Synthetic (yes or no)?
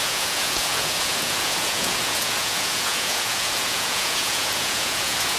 yes